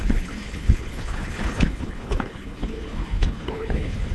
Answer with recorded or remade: remade